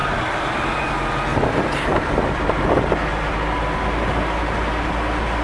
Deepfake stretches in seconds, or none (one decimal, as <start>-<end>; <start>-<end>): 0.0-0.9; 1.3-2.6